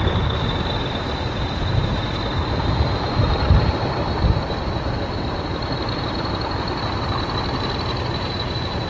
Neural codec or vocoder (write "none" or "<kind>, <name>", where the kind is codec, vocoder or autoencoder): none